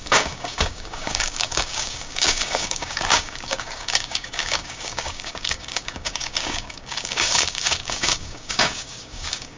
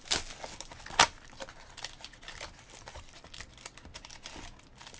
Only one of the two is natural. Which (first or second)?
second